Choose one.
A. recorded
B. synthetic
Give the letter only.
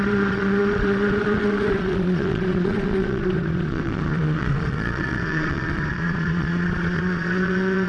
B